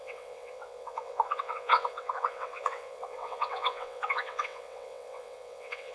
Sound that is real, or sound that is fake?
fake